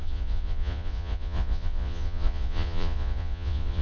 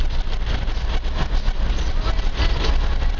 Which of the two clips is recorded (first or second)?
second